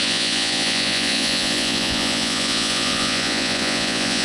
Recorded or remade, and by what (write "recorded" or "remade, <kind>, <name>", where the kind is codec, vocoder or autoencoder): remade, vocoder, Vocos